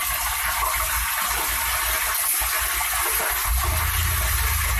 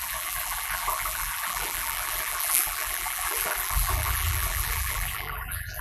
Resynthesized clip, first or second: second